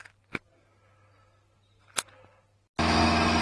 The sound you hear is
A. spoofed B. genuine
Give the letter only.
B